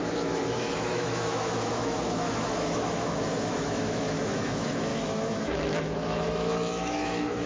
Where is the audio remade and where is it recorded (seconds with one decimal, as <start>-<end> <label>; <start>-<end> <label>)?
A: 0.0-7.5 remade

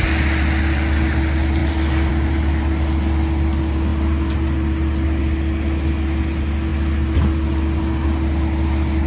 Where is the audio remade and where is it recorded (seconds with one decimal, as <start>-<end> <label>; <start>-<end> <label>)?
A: 0.0-9.1 recorded